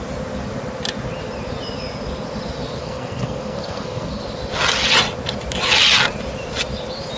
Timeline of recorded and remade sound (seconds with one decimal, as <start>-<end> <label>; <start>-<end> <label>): 0.0-2.8 recorded; 2.8-4.2 remade; 4.2-7.2 recorded